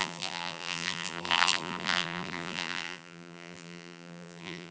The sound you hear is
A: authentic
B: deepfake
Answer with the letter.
B